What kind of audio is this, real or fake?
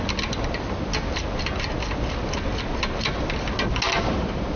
real